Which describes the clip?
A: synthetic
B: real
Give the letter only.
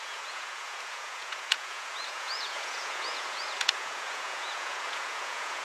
A